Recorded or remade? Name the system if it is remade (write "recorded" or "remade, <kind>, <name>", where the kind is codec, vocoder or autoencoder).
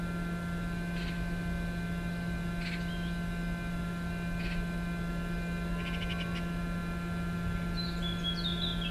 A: recorded